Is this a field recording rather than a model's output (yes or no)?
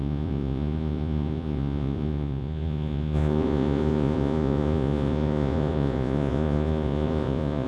no